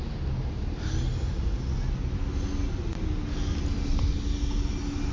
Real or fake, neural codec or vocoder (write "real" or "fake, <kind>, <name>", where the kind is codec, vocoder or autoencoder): real